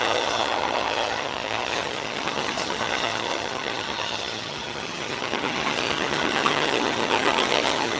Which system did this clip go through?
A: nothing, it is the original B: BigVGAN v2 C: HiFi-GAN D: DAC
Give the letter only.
C